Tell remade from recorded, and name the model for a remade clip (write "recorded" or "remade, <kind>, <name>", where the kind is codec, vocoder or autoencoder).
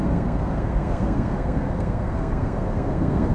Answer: remade, codec, SNAC